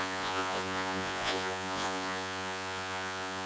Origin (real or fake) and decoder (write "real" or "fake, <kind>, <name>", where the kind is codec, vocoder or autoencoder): fake, vocoder, Vocos